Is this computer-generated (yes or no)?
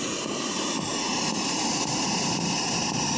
yes